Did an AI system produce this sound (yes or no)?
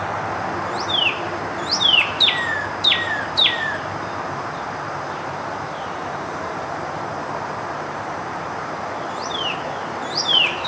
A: yes